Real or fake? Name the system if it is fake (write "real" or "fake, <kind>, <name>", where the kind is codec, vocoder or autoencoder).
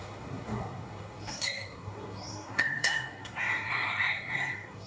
fake, codec, SNAC